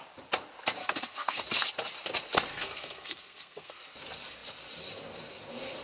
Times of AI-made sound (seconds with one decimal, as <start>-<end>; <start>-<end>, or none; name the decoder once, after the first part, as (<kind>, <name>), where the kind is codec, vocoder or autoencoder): 0.8-1.4 (codec, SNAC); 2.5-3.8